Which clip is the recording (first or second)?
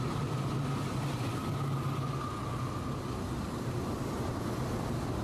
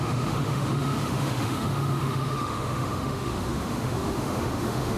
first